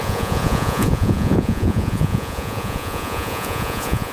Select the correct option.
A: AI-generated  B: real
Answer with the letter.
A